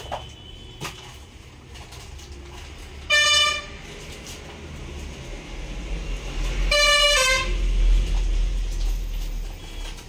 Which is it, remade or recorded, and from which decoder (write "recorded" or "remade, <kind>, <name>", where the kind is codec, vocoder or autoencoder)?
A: recorded